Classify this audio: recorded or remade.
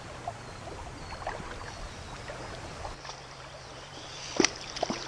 recorded